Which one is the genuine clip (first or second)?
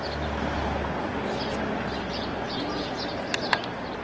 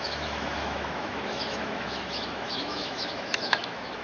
first